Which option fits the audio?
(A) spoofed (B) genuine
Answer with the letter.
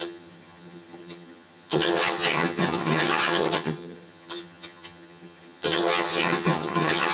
A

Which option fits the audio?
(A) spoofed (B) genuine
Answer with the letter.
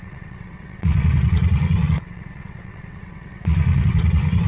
A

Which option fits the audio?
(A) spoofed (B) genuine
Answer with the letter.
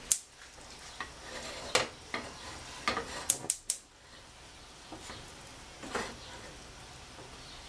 B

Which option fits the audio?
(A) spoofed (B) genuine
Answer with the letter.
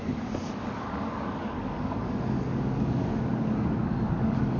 A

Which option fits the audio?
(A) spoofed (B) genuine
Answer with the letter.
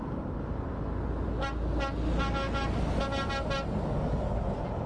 B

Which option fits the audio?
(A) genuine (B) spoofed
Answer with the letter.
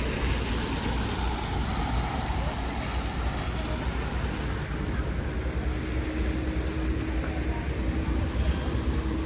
A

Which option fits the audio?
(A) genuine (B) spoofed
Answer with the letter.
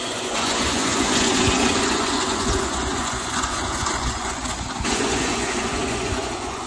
B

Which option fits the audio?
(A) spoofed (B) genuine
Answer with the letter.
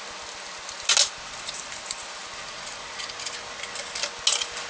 B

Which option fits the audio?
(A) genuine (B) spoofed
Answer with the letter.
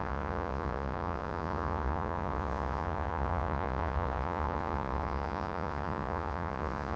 B